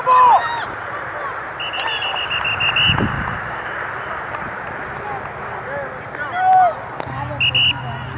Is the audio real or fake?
real